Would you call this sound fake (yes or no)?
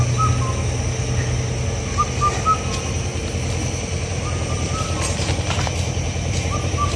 no